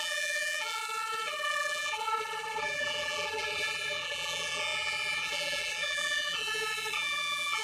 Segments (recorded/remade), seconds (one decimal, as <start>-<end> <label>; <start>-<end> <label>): 0.0-7.6 remade